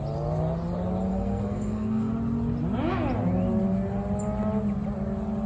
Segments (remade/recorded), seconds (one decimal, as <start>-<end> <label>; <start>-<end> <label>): 0.0-1.1 recorded; 1.1-2.1 remade; 2.1-5.5 recorded